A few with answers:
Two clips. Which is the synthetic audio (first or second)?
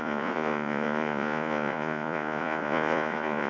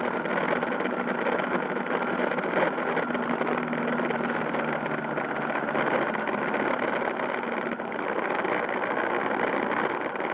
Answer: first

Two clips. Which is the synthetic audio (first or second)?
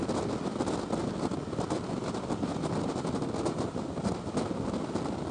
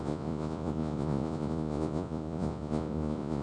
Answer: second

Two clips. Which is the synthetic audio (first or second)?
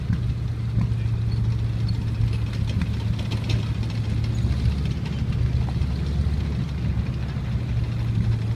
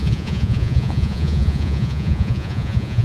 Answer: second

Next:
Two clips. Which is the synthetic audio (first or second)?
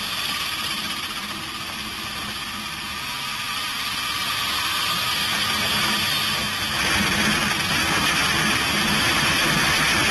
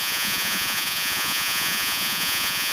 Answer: second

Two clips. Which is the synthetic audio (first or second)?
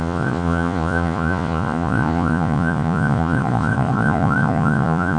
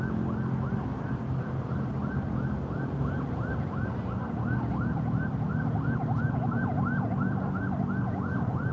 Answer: first